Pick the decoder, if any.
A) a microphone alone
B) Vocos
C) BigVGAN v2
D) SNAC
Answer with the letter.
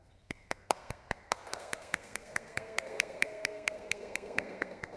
D